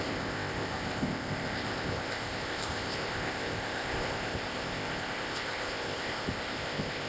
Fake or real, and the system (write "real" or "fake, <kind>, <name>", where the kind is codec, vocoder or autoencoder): fake, codec, ZipCodec